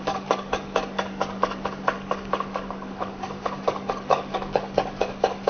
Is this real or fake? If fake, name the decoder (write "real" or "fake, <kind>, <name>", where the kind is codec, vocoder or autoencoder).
fake, codec, DAC